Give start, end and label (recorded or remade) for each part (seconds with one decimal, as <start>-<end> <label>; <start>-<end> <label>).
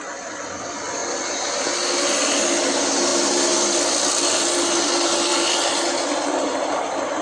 0.0-7.2 recorded